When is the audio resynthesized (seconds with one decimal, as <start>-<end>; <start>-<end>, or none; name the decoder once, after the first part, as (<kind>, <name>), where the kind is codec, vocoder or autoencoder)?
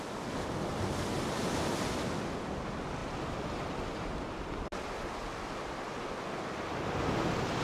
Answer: none